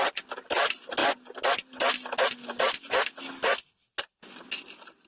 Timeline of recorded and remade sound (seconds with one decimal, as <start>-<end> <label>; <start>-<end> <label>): 0.0-5.1 recorded